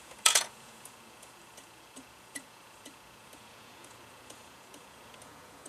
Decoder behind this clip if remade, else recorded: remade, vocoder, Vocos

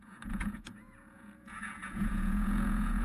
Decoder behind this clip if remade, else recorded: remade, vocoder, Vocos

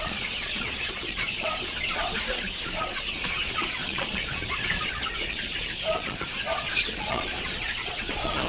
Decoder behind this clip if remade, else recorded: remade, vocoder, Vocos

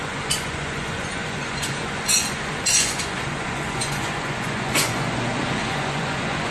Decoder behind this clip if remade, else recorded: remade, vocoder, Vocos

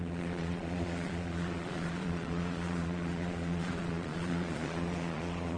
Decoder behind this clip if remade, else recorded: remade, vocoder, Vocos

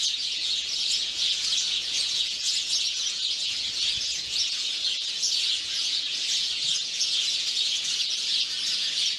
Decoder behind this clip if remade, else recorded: remade, vocoder, Vocos